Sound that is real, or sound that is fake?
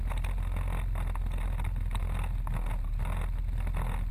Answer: real